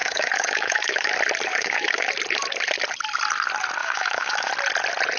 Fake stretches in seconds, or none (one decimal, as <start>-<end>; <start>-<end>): 0.0-1.1; 1.5-2.1; 3.8-4.5